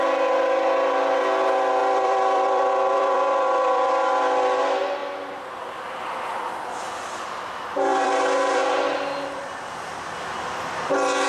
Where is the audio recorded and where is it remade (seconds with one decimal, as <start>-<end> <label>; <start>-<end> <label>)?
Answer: 0.0-1.8 recorded; 1.8-4.1 remade; 4.1-7.9 recorded; 7.9-8.7 remade; 8.7-11.3 recorded